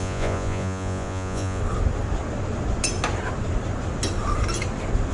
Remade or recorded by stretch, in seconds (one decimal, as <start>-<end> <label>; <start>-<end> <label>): 0.0-1.6 remade; 1.6-5.1 recorded